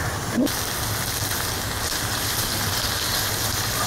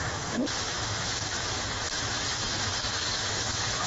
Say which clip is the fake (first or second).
second